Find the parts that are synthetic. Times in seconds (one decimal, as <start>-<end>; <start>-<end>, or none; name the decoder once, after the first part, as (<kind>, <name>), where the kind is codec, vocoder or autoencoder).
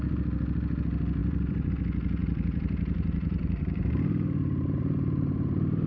1.2-1.7 (vocoder, BigVGAN v2); 2.2-5.9